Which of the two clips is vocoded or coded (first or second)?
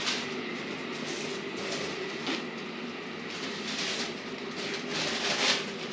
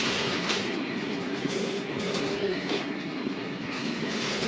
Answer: second